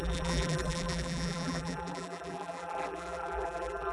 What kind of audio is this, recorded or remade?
remade